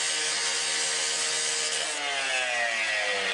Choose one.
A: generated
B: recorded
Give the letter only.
B